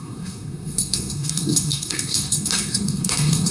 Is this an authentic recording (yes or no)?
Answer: no